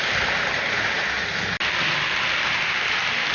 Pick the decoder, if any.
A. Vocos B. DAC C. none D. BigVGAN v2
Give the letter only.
C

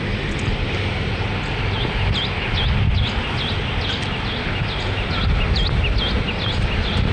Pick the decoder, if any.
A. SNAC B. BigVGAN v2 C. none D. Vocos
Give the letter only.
C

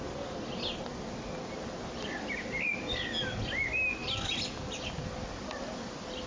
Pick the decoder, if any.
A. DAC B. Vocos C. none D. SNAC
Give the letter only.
C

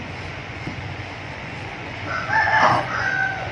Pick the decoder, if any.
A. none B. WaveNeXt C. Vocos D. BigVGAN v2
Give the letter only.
C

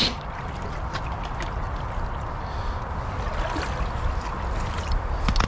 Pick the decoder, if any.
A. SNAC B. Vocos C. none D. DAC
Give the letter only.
C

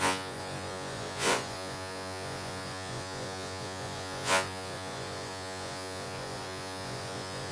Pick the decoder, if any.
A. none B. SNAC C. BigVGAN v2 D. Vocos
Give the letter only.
D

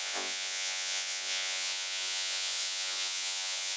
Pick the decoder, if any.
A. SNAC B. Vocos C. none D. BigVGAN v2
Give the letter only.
B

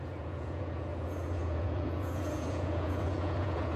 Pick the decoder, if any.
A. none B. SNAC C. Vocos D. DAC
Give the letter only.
C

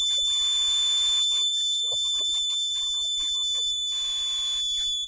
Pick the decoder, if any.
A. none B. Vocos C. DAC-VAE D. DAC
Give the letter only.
A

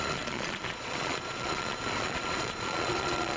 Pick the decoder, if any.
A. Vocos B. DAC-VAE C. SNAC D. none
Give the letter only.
A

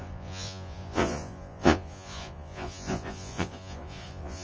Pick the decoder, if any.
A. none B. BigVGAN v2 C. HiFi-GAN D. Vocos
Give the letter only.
D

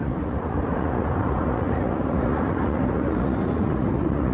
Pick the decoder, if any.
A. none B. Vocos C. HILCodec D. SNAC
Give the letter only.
B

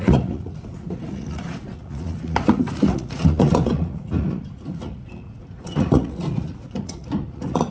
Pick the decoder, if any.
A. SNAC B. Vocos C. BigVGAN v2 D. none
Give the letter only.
B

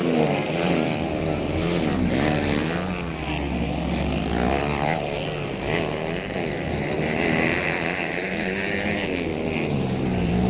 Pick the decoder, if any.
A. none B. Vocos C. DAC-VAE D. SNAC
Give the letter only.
A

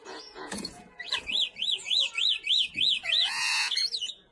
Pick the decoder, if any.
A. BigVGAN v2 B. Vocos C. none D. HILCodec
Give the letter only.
B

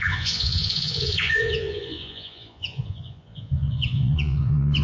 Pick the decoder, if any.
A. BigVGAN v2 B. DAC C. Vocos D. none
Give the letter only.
C